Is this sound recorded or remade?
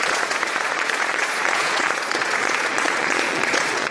remade